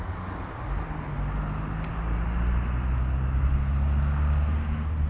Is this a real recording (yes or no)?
yes